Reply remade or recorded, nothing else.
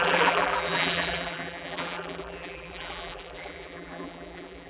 remade